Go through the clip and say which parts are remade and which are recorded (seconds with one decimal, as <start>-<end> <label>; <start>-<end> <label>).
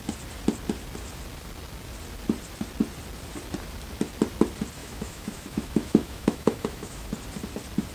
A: 0.0-4.8 recorded; 4.8-7.1 remade; 7.1-7.9 recorded